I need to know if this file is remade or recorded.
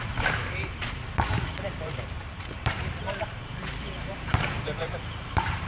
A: remade